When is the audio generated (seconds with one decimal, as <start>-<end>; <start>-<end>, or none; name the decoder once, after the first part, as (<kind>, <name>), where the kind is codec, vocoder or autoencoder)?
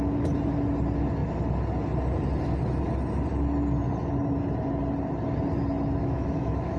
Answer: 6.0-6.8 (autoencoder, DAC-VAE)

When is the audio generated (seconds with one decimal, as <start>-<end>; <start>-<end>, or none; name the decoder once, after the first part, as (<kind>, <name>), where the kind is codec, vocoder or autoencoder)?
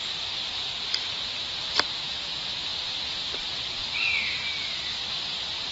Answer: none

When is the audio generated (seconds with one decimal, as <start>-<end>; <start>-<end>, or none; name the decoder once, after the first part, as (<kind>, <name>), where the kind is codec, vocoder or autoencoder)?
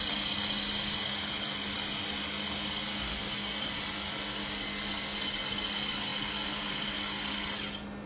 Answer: none